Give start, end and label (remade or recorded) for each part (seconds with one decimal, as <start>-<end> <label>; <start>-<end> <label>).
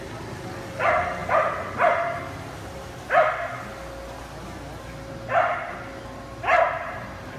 0.0-7.4 recorded